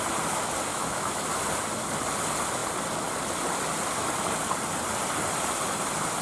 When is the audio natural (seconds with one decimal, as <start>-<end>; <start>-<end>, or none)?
0.0-0.7; 1.2-6.2